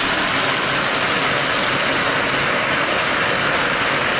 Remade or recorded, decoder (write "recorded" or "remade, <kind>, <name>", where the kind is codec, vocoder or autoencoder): recorded